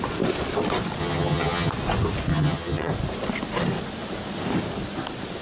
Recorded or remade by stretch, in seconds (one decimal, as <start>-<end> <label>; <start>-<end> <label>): 0.0-1.0 recorded; 1.0-1.7 remade; 1.7-2.3 recorded; 2.3-2.9 remade; 2.9-5.4 recorded